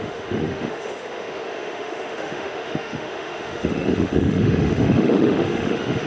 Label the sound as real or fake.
fake